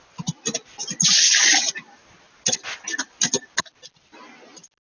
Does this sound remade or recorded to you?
recorded